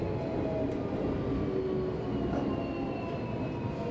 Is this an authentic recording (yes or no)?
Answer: yes